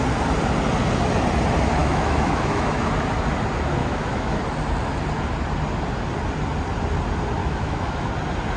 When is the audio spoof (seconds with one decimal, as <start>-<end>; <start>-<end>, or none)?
1.8-2.9; 3.8-4.4; 7.4-8.1